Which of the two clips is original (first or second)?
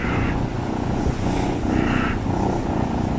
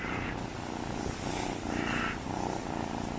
second